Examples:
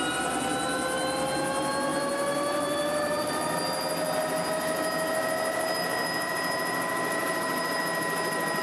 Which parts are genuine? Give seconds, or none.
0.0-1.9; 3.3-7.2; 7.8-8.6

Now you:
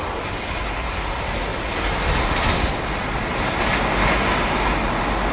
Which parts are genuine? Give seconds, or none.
0.0-5.3